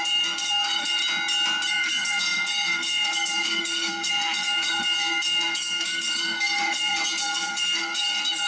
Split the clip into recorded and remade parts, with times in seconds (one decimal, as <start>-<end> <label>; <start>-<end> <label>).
0.0-1.0 remade; 1.0-1.7 recorded; 1.7-8.5 remade